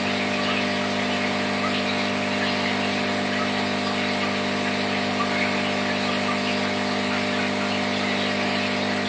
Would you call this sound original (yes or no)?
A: yes